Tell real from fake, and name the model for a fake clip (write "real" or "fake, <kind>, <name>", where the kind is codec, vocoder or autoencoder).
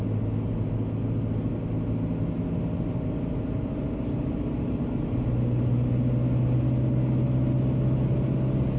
real